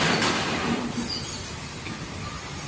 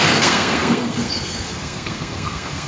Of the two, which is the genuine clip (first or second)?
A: first